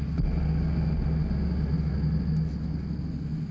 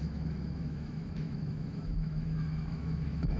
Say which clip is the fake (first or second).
second